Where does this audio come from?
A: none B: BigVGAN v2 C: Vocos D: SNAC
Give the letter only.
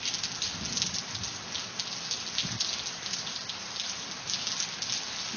A